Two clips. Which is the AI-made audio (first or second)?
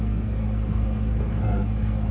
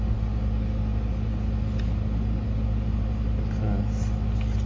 first